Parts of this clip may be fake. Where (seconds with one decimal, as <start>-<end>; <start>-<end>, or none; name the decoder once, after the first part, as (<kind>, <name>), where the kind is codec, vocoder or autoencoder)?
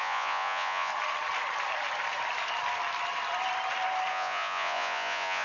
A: 0.0-0.9 (vocoder, Vocos); 4.1-5.4